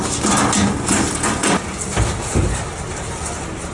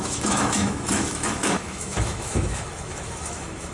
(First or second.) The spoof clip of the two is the second